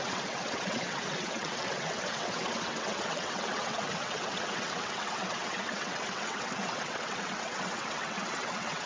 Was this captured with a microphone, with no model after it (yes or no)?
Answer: no